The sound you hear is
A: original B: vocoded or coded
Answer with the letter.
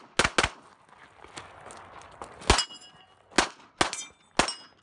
A